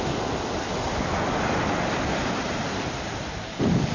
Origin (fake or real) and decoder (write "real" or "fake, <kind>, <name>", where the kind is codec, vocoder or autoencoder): real